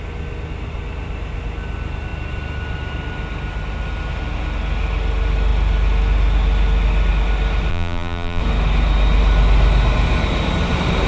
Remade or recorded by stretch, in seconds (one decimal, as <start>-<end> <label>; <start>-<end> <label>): 0.0-7.7 recorded; 7.7-8.4 remade; 8.4-11.1 recorded